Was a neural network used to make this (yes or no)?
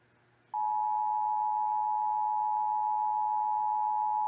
no